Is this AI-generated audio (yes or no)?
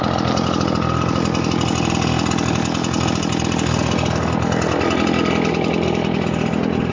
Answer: no